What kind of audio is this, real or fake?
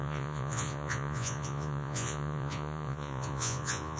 fake